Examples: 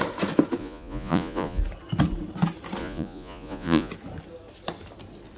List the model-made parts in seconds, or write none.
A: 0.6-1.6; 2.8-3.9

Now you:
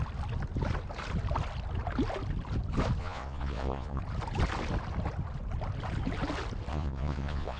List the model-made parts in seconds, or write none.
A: 3.0-4.0; 6.7-7.6

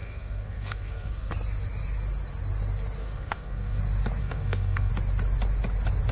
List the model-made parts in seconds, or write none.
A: 0.0-1.3; 3.0-3.8; 4.2-4.9